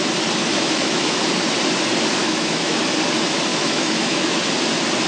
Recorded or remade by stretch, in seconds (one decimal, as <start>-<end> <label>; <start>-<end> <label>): 0.0-0.4 recorded; 0.4-1.2 remade; 1.2-2.2 recorded; 2.2-2.8 remade; 2.8-3.5 recorded; 3.5-4.4 remade; 4.4-5.1 recorded